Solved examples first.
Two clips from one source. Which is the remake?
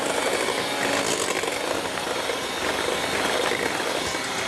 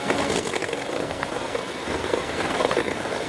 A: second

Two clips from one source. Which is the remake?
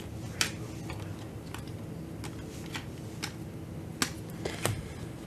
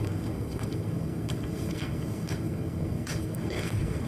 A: second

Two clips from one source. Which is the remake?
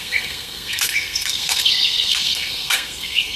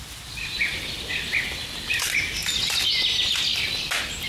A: first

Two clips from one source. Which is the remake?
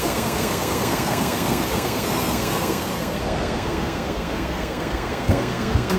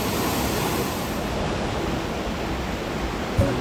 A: first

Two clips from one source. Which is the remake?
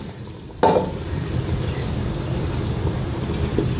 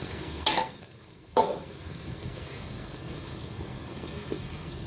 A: second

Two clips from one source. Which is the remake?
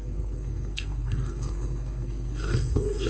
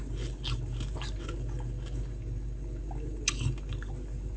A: first